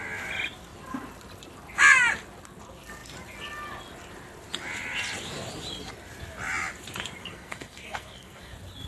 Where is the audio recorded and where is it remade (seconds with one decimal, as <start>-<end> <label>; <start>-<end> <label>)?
0.0-7.2 recorded; 7.2-8.5 remade; 8.5-8.9 recorded